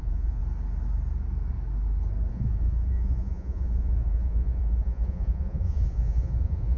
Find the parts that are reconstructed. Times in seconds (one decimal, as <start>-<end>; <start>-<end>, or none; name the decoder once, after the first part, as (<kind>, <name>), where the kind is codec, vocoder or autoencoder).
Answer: 0.0-0.4 (vocoder, Vocos); 2.3-6.8